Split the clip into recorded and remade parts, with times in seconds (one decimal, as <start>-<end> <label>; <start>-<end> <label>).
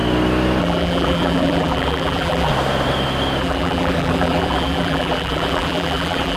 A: 0.0-0.6 recorded; 0.6-2.5 remade; 2.5-3.4 recorded; 3.4-6.4 remade